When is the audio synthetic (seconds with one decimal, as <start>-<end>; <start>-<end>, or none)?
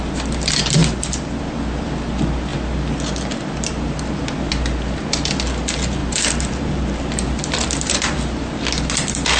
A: 0.8-1.4; 2.5-4.5; 6.0-9.4